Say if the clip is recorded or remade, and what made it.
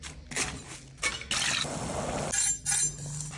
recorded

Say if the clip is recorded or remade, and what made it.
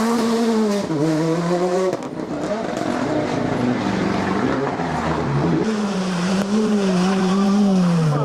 remade, vocoder, BigVGAN v2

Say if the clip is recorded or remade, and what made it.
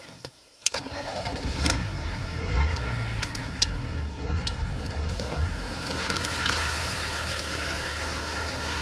remade, codec, SNAC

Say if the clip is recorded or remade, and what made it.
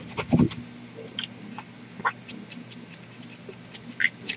recorded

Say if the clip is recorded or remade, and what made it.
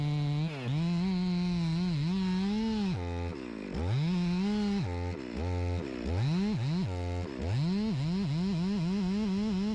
recorded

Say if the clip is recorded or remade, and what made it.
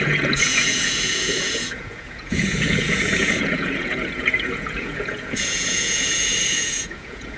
remade, vocoder, Vocos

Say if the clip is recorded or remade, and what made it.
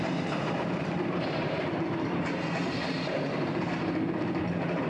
remade, vocoder, BigVGAN v2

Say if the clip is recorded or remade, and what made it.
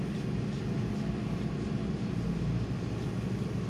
recorded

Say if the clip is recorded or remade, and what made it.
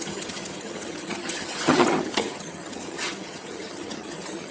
remade, vocoder, HiFi-GAN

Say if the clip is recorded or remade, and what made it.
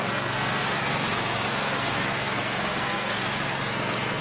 remade, codec, SNAC